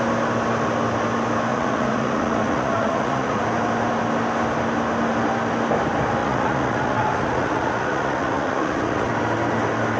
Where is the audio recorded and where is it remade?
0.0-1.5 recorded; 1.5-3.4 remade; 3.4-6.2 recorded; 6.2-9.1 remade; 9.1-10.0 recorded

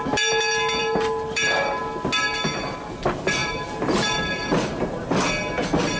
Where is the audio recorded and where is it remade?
0.0-0.8 recorded; 0.8-1.8 remade; 1.8-3.4 recorded; 3.4-5.1 remade; 5.1-6.0 recorded

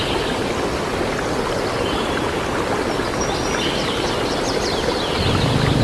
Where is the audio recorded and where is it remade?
0.0-5.8 recorded

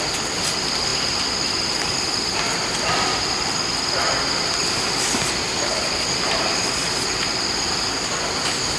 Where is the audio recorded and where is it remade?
0.0-8.8 recorded